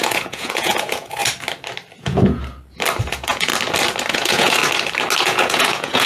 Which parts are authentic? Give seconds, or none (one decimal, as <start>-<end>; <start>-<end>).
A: 1.2-2.0; 2.4-3.1; 3.5-4.1; 4.6-5.2